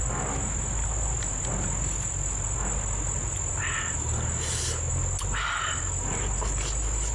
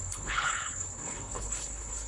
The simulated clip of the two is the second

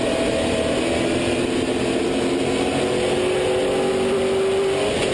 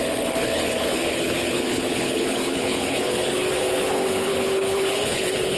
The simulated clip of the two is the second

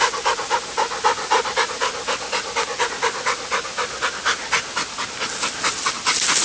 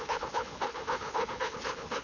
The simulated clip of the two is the second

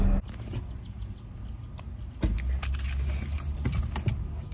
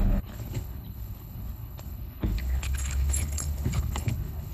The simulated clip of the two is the second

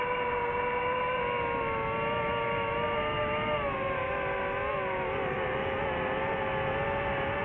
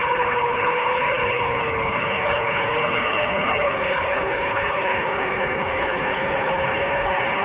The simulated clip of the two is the second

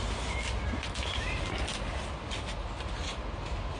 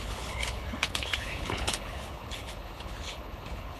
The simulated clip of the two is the second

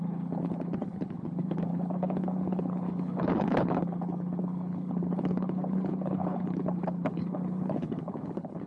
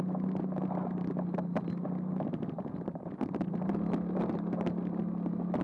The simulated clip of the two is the first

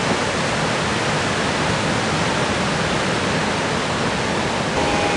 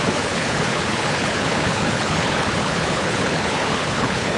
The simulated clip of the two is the second